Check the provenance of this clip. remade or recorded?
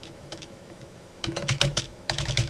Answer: remade